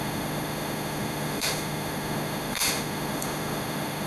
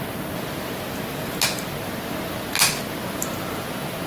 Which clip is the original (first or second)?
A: second